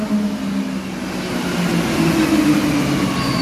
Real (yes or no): yes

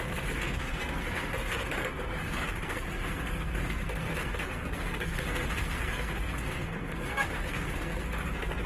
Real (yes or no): no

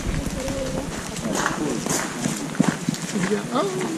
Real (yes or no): yes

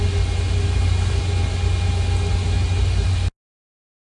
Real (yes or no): yes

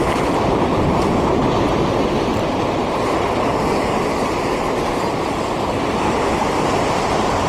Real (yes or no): no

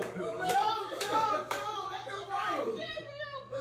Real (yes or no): no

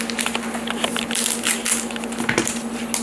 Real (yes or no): yes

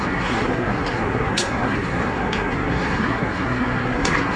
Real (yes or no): no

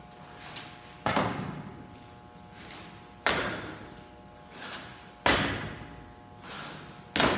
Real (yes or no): yes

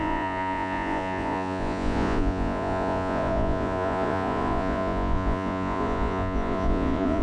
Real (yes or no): no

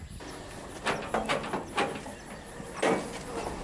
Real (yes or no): yes